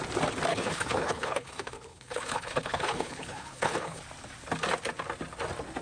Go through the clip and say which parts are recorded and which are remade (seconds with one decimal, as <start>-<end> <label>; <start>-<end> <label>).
0.0-0.5 recorded; 0.5-4.0 remade; 4.0-5.8 recorded